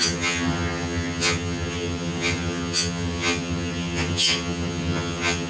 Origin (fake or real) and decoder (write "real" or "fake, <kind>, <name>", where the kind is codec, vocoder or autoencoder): fake, vocoder, HiFi-GAN